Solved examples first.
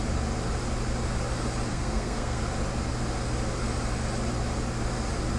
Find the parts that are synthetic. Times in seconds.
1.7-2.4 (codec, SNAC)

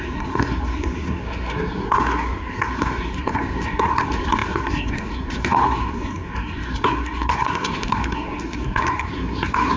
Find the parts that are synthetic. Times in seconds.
0.0-9.8 (codec, SNAC)

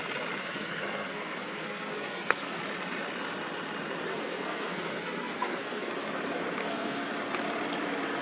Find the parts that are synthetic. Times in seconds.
0.4-2.6 (codec, SNAC); 4.1-5.9; 6.6-7.1

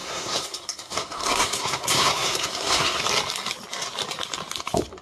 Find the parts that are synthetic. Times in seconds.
0.0-3.0 (codec, SNAC)

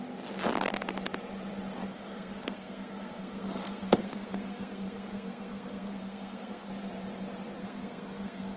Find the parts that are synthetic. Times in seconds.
1.9-6.7 (codec, SNAC); 7.6-8.6

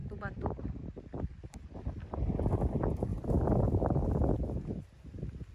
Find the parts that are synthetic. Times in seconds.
none